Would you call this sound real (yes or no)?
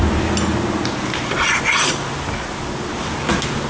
yes